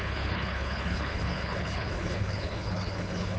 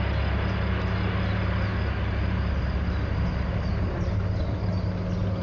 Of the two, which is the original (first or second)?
second